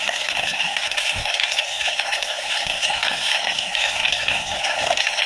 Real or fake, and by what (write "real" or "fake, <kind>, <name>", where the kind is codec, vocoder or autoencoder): fake, codec, SNAC